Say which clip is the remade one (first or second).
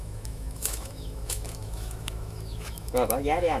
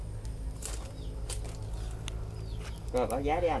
first